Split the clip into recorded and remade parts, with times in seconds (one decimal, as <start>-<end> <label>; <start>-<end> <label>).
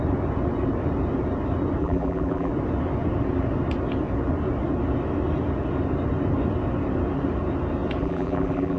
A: 0.0-1.8 recorded; 1.8-2.5 remade; 2.5-8.0 recorded; 8.0-8.8 remade